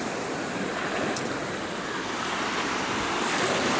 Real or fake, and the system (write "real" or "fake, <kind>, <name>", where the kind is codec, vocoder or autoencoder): real